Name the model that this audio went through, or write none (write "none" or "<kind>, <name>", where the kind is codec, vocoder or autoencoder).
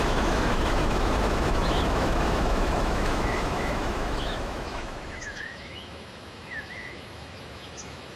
autoencoder, DAC-VAE